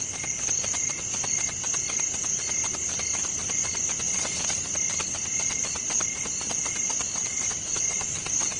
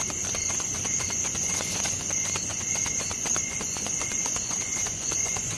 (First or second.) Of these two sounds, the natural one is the first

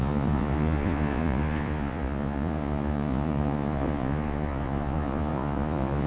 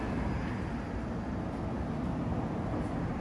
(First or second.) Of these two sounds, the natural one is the second